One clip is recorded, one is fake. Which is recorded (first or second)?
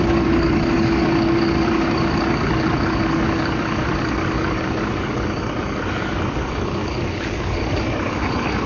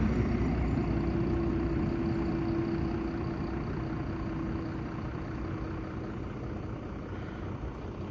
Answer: second